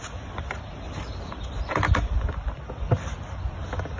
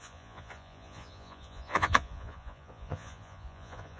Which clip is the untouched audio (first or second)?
first